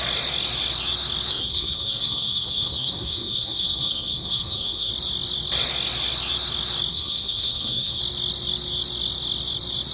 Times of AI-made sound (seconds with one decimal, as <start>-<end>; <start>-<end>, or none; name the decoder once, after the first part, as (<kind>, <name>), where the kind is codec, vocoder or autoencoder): 1.3-4.9 (codec, SNAC); 6.9-8.0